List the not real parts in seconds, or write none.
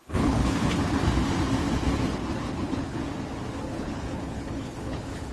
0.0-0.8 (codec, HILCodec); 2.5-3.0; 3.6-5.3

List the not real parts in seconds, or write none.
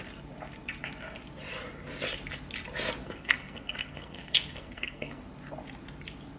3.0-5.2 (codec, SNAC)